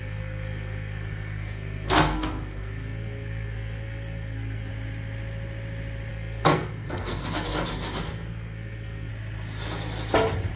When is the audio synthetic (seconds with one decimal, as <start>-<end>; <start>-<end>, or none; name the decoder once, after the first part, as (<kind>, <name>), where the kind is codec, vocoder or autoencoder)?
0.0-4.7 (codec, SNAC); 6.1-9.1

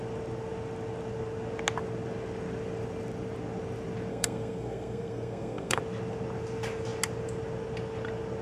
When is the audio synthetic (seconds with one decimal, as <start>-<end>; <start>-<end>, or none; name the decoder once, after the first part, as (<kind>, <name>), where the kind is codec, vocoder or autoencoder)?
4.1-5.8 (codec, SNAC)

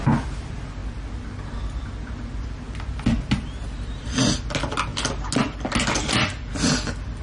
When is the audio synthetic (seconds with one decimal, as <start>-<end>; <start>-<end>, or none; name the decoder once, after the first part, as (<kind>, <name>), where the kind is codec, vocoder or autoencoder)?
none